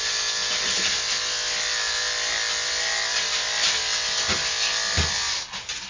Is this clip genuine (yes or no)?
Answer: yes